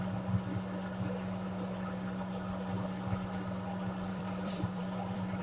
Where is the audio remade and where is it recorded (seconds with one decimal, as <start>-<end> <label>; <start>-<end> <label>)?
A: 0.0-4.1 recorded; 4.1-5.4 remade